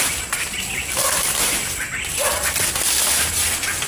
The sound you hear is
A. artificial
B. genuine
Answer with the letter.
B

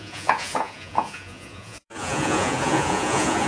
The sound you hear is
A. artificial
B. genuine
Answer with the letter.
A